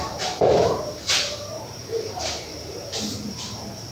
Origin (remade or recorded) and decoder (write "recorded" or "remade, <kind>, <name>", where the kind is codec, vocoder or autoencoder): remade, vocoder, BigVGAN v2